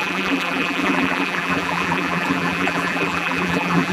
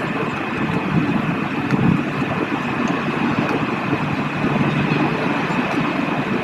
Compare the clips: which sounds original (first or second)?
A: second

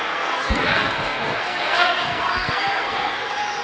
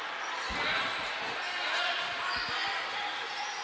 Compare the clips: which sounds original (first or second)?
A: second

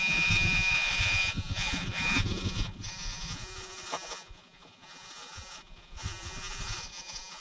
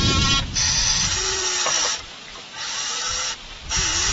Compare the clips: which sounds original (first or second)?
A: second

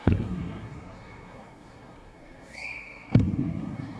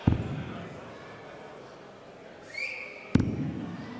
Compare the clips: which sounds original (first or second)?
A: second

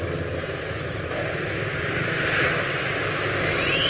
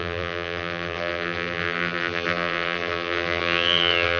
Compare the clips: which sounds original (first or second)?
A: first